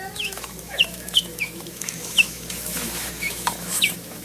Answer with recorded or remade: remade